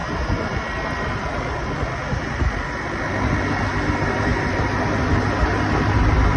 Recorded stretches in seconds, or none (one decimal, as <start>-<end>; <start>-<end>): 0.0-6.4